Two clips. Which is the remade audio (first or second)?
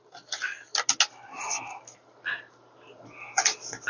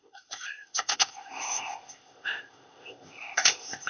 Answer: second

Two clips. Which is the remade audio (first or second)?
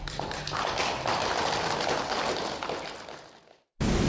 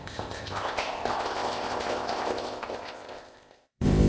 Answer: second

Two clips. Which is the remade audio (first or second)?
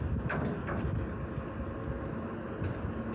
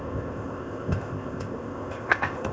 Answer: second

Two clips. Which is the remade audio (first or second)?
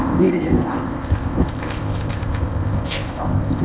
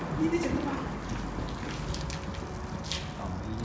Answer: first